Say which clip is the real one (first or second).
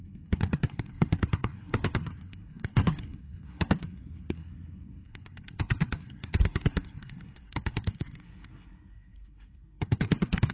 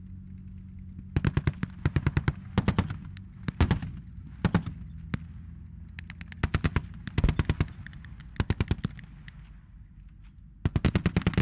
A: second